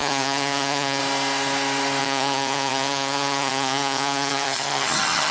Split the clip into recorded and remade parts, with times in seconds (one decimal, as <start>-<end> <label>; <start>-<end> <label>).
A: 0.0-1.0 remade; 1.0-2.0 recorded; 2.0-5.3 remade